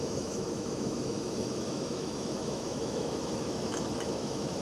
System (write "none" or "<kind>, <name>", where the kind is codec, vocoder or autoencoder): autoencoder, DAC-VAE